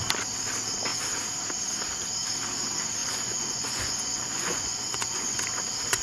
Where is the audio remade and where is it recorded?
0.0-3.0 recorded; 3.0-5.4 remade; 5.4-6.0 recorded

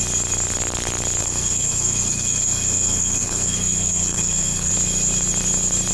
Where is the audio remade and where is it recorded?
0.0-1.2 recorded; 1.2-4.7 remade; 4.7-5.9 recorded